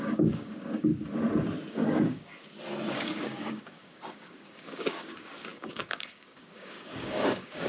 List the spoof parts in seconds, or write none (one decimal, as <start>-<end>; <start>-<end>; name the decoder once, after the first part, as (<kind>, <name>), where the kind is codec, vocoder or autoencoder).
0.0-0.9 (codec, DAC); 1.7-2.3; 2.9-7.7